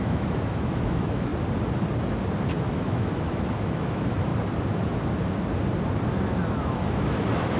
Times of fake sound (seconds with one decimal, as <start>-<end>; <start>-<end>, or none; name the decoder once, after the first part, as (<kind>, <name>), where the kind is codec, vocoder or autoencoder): 0.0-1.3 (autoencoder, DAC-VAE); 2.7-4.3; 6.6-7.6